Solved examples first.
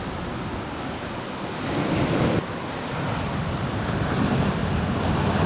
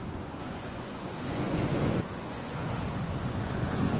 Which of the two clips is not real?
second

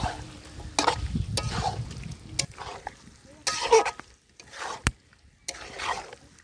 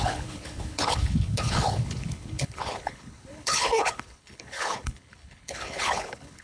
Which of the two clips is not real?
second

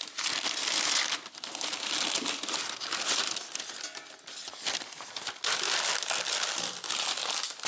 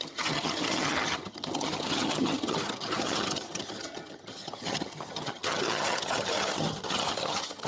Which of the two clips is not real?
second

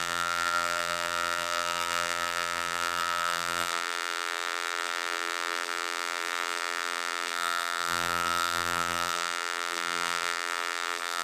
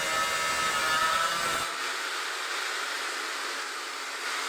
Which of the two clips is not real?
first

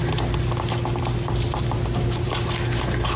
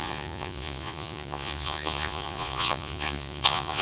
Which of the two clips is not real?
second